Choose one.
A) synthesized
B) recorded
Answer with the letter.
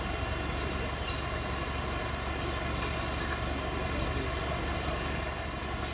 B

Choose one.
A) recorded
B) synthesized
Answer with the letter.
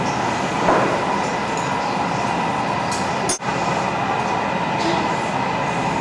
A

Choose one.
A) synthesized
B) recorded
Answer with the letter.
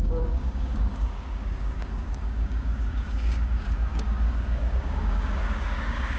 A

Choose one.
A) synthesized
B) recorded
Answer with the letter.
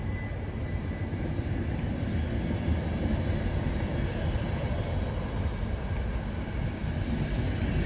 B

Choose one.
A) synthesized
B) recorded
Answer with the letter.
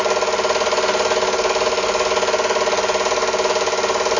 B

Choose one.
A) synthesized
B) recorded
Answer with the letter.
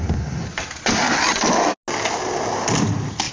B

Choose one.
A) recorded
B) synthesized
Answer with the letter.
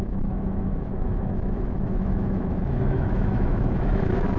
B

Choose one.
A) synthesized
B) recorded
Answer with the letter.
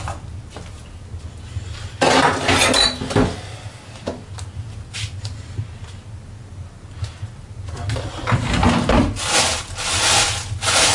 B